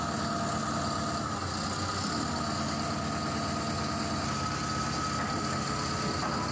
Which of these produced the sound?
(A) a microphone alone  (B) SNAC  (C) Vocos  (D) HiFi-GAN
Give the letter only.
A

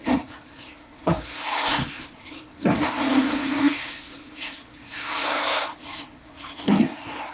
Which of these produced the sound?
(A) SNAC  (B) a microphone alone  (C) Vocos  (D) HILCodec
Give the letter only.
A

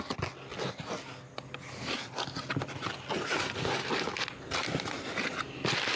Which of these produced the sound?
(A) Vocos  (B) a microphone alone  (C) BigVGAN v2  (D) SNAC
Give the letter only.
B